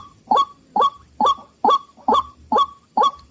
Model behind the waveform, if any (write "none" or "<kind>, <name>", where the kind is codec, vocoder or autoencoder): vocoder, BigVGAN v2